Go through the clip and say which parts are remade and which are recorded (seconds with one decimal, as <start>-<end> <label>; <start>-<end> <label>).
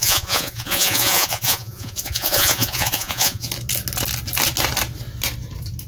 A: 0.0-3.5 remade; 3.5-5.9 recorded